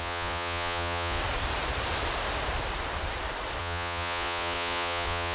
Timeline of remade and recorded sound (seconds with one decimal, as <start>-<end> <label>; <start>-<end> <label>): 0.0-1.2 remade; 1.2-3.6 recorded; 3.6-5.3 remade